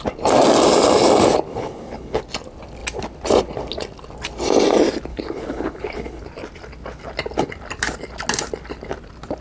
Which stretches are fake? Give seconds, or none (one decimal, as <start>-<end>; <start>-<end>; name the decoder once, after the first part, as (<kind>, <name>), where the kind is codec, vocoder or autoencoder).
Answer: 1.5-2.2 (codec, HILCodec); 5.1-6.2